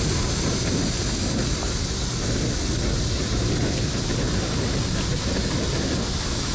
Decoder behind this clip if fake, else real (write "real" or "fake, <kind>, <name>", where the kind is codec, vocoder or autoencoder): real